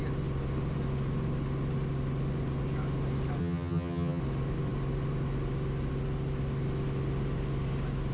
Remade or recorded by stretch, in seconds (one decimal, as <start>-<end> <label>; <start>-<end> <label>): 0.0-3.4 recorded; 3.4-4.2 remade; 4.2-8.1 recorded